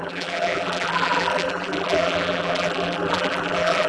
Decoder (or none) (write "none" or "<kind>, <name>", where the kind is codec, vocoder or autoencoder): vocoder, BigVGAN v2